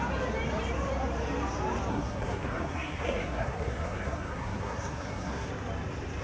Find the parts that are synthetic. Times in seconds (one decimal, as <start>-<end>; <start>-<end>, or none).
1.9-5.5